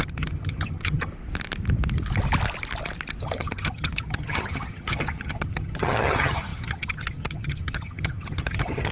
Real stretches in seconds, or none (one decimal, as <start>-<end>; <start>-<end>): 1.1-3.2